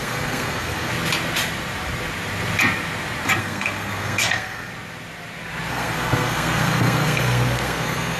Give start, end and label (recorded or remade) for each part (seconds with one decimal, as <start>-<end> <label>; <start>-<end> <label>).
0.0-0.9 remade; 0.9-3.4 recorded; 3.4-4.7 remade; 4.7-5.7 recorded; 5.7-8.2 remade